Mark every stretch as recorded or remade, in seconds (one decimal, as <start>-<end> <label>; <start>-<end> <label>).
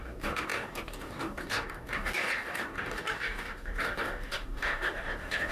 0.0-5.5 remade